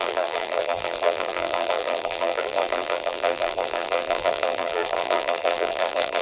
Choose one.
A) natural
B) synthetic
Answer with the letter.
B